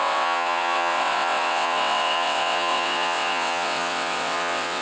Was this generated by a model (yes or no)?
yes